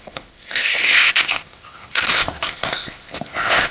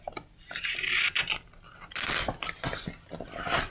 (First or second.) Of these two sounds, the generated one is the first